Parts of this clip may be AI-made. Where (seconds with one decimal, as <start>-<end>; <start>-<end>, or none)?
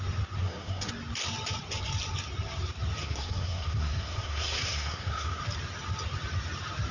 0.4-0.9; 3.0-5.4